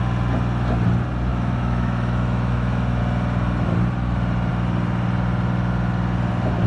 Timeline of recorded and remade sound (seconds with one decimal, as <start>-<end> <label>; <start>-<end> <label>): 0.0-1.3 recorded; 1.3-3.0 remade; 3.0-6.7 recorded